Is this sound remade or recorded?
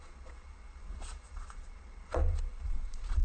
remade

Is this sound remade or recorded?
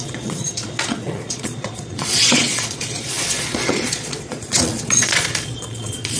remade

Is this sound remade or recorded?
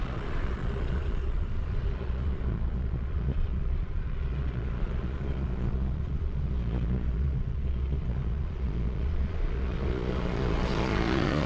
remade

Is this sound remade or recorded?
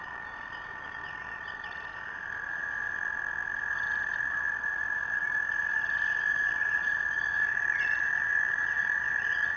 remade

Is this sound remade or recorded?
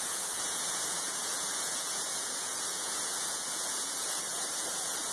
remade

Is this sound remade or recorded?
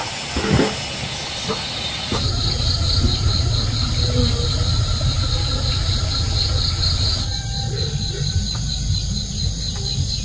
recorded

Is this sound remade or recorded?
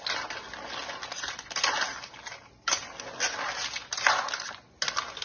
recorded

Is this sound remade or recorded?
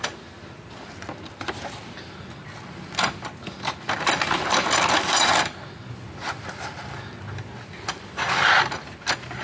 recorded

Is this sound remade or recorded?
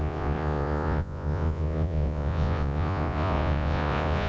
remade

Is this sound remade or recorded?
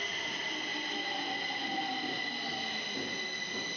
recorded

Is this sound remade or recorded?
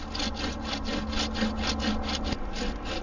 recorded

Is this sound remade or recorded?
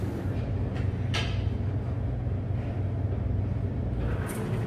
recorded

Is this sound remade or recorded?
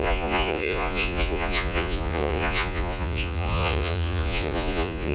remade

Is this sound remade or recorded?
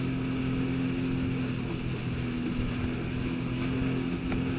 recorded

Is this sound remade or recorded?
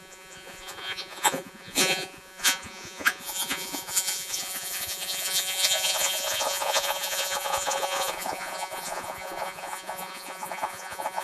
remade